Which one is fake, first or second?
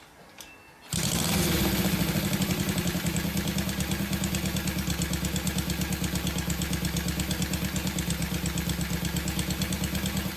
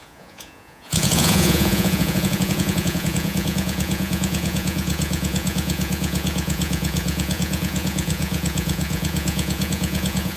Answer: second